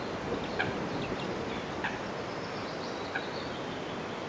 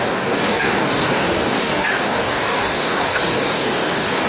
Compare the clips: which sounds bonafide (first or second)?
first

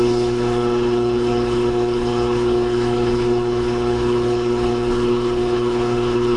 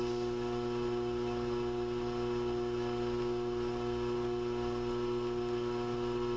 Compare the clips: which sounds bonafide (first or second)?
second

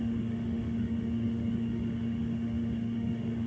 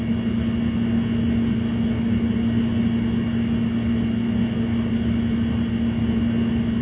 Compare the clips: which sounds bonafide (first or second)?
second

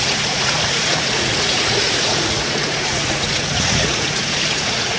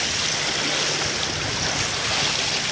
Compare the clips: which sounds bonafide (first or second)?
second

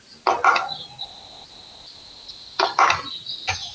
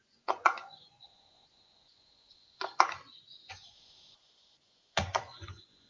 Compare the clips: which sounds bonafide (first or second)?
first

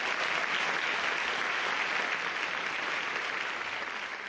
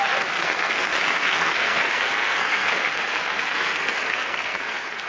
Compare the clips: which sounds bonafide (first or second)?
first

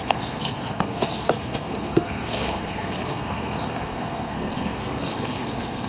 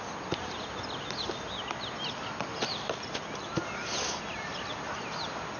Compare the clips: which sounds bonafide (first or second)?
second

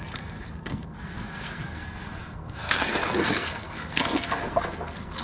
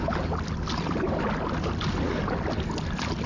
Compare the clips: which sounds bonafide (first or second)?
second